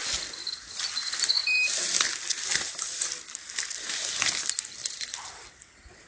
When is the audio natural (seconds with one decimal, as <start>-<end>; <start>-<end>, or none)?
0.0-6.1